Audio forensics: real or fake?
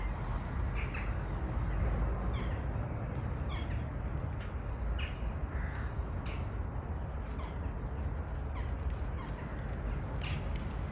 real